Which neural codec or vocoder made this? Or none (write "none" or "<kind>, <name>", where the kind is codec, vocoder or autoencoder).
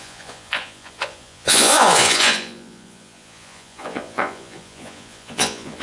vocoder, Vocos